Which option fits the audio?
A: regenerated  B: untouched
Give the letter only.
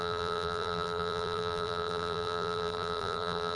A